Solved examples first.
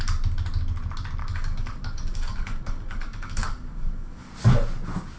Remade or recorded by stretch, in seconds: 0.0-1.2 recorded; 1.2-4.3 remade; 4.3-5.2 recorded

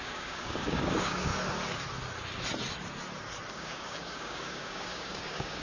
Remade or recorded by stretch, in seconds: 0.0-1.3 remade; 1.3-3.5 recorded; 3.5-5.6 remade

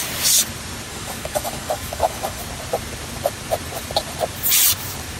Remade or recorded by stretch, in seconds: 0.0-0.9 recorded; 0.9-2.4 remade; 2.4-5.2 recorded

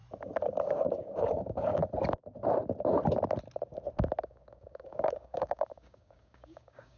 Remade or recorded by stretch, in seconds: 0.0-0.6 recorded; 0.6-1.8 remade; 1.8-4.2 recorded; 4.2-7.0 remade

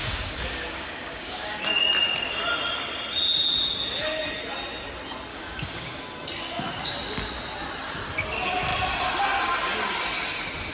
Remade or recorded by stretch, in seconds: 0.0-1.6 remade; 1.6-5.3 recorded; 5.3-6.0 remade; 6.0-10.7 recorded

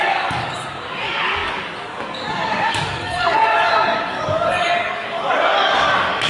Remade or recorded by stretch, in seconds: 0.0-6.3 remade

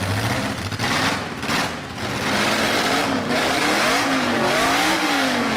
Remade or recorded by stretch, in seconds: 0.0-3.0 recorded; 3.0-5.6 remade